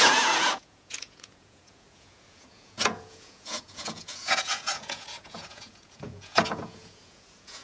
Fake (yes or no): yes